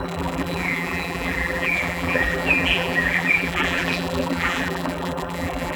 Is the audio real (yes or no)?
no